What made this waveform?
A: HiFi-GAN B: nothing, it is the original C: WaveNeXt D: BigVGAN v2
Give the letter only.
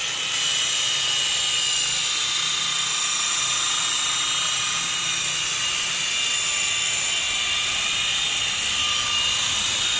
B